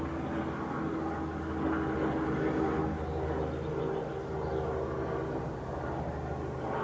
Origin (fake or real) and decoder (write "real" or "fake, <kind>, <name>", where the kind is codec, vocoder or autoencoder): real